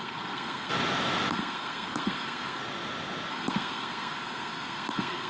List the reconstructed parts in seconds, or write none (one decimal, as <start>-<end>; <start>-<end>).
0.0-0.7; 1.3-2.6; 3.3-5.3